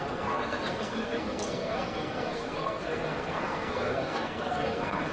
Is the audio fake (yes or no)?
yes